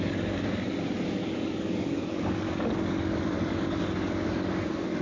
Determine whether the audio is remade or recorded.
remade